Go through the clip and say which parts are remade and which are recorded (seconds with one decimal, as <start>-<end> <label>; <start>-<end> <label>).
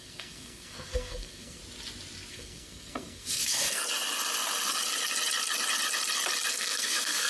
0.0-1.6 remade; 1.6-2.3 recorded; 2.3-3.8 remade; 3.8-6.5 recorded; 6.5-7.3 remade